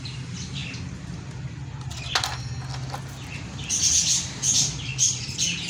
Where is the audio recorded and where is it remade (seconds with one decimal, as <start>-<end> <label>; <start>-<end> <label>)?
0.0-5.7 recorded